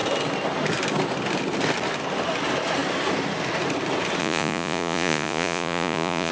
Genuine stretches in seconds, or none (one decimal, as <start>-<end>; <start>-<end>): 0.0-4.2